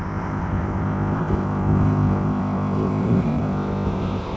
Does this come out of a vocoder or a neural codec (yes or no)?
yes